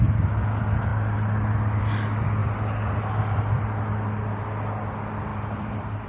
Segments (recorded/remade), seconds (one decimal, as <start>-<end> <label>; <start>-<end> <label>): 0.0-5.3 recorded; 5.3-6.1 remade